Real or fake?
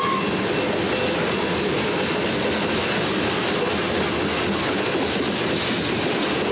real